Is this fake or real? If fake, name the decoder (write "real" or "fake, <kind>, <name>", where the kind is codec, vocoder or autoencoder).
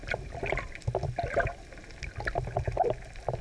real